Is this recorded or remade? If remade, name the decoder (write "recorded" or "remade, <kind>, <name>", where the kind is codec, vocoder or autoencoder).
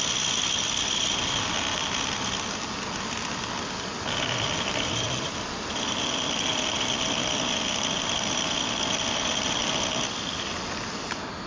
recorded